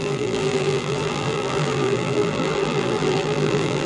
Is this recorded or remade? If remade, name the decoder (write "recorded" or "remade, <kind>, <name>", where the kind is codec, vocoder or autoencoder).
remade, vocoder, BigVGAN v2